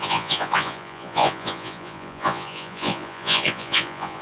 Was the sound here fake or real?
fake